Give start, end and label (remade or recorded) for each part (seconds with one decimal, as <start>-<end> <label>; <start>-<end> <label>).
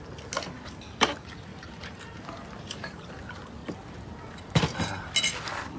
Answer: 0.0-1.5 recorded; 1.5-3.1 remade; 3.1-5.8 recorded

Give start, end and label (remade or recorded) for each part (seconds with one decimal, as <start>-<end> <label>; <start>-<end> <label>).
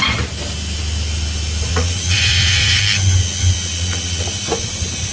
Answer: 0.0-1.7 recorded; 1.7-2.8 remade; 2.8-3.7 recorded; 3.7-5.1 remade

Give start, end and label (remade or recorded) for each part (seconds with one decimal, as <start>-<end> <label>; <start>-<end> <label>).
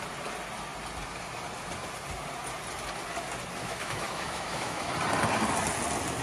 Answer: 0.0-3.6 recorded; 3.6-4.9 remade; 4.9-6.2 recorded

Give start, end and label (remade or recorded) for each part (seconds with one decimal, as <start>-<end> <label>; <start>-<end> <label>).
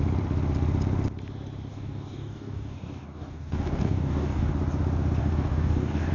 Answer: 0.0-1.7 recorded; 1.7-4.5 remade; 4.5-5.2 recorded; 5.2-6.1 remade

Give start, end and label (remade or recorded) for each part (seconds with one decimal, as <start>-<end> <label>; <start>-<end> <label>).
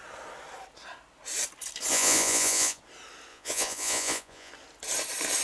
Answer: 0.0-1.9 recorded; 1.9-2.8 remade; 2.8-3.3 recorded; 3.3-4.5 remade; 4.5-5.4 recorded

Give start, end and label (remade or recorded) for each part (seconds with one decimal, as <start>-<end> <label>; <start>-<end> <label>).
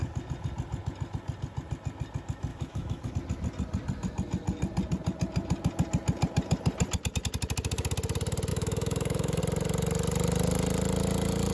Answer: 0.0-2.5 recorded; 2.5-3.1 remade; 3.1-8.5 recorded; 8.5-9.4 remade; 9.4-11.5 recorded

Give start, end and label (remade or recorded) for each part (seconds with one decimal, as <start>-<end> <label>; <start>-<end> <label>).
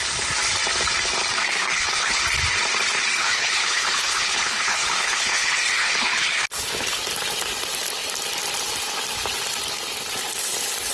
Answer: 0.0-1.4 recorded; 1.4-2.2 remade; 2.2-3.2 recorded; 3.2-7.0 remade; 7.0-10.9 recorded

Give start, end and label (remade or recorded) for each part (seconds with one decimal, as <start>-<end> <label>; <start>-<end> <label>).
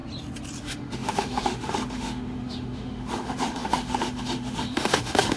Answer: 0.0-0.6 recorded; 0.6-5.4 remade